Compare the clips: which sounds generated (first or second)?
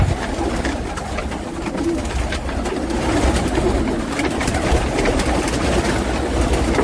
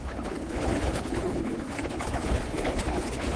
second